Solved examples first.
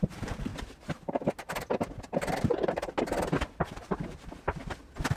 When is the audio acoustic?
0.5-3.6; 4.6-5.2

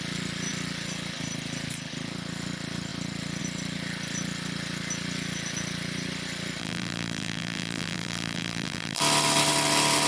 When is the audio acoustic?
0.0-6.6; 9.0-10.1

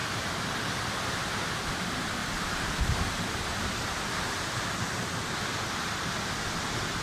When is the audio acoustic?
0.5-2.2; 4.4-7.0

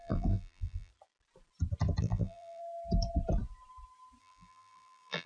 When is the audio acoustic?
0.9-2.0; 2.6-4.2

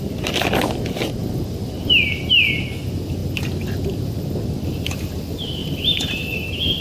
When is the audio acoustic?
0.0-1.2; 1.9-3.2; 5.1-5.6

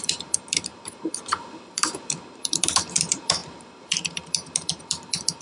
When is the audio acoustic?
none